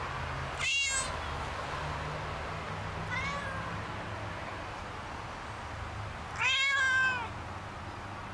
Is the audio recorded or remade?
recorded